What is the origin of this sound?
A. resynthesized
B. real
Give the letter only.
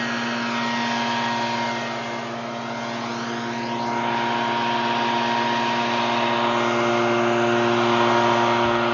B